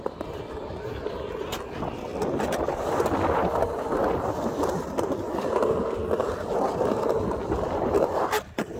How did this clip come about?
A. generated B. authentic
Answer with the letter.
B